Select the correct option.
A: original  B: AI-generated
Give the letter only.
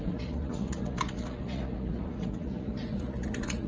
B